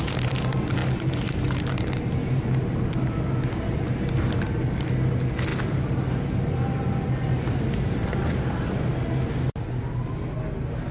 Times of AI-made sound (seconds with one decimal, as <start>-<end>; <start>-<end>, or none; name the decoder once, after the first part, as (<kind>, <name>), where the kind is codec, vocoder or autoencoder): none